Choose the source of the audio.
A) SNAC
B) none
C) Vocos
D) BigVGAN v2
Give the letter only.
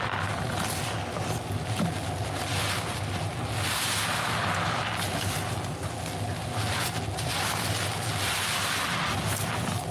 B